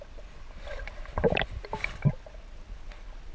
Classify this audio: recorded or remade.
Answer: recorded